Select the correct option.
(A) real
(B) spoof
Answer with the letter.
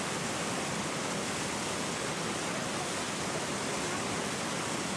A